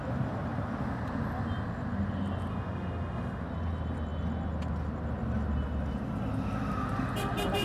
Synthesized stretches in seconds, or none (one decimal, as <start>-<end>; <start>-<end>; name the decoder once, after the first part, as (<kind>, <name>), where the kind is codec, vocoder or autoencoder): 2.5-3.4 (autoencoder, DAC-VAE)